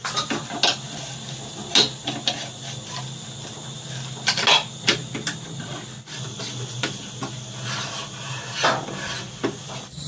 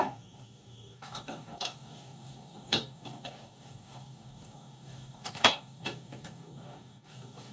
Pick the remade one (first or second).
second